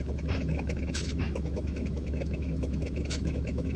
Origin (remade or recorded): remade